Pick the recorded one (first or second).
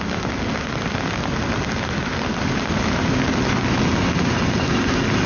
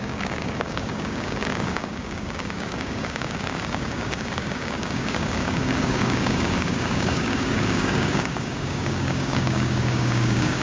first